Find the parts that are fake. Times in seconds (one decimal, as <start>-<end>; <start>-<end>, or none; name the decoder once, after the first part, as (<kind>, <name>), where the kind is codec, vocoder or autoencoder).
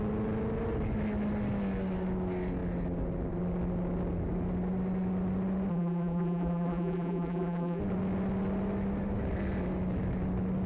5.7-7.8 (vocoder, BigVGAN v2)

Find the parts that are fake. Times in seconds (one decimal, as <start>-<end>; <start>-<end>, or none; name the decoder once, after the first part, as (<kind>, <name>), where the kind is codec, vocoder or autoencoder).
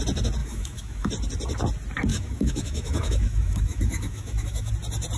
0.4-1.1 (autoencoder, DAC-VAE); 2.1-4.7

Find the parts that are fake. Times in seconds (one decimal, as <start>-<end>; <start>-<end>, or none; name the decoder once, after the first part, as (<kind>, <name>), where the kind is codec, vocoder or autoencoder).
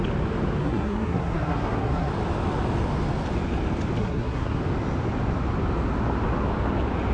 0.6-2.1 (codec, SNAC); 4.0-4.6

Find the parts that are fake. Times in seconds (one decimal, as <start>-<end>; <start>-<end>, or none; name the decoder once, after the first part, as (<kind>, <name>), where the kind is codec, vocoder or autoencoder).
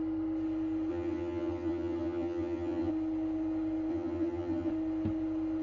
0.9-2.9 (vocoder, HiFi-GAN); 3.9-4.7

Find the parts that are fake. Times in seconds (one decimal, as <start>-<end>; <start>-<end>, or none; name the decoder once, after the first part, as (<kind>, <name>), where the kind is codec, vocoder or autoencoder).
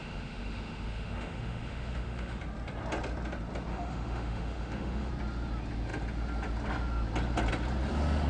0.0-2.4 (autoencoder, DAC-VAE); 3.7-5.1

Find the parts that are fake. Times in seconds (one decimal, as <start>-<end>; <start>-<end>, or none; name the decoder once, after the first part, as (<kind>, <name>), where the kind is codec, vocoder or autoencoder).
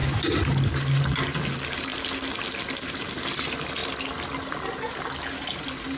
none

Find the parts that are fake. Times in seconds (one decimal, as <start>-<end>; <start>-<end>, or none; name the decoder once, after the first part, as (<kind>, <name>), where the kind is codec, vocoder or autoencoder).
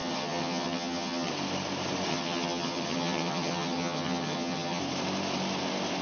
0.0-1.3 (vocoder, HiFi-GAN); 2.1-4.8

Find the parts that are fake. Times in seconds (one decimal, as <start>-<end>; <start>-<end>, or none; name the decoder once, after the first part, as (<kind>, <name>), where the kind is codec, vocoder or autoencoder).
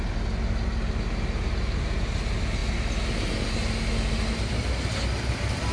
none